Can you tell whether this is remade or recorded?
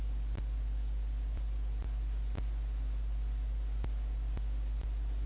recorded